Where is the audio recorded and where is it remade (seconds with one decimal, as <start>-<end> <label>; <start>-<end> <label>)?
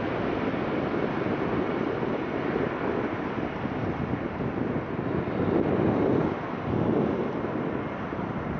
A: 0.0-8.6 recorded